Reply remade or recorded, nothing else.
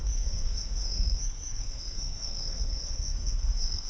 remade